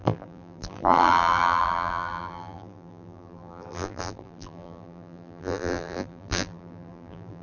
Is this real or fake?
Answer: fake